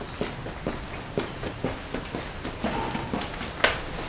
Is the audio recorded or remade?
recorded